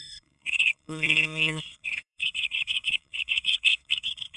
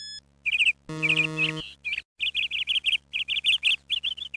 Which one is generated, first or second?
first